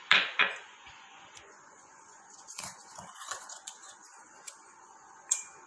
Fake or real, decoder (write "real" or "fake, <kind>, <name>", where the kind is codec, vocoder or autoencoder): fake, vocoder, Vocos